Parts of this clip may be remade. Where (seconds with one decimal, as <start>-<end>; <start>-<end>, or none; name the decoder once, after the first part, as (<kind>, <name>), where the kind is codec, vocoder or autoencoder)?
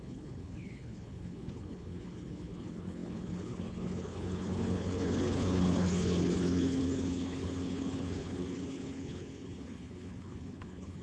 0.0-11.0 (codec, HILCodec)